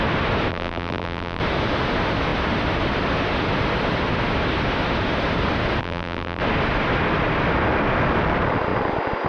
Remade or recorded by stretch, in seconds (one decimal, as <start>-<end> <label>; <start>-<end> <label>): 0.0-0.5 recorded; 0.5-1.4 remade; 1.4-5.8 recorded; 5.8-6.4 remade; 6.4-9.3 recorded